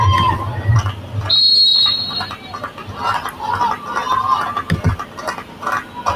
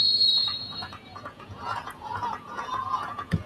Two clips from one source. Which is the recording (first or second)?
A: first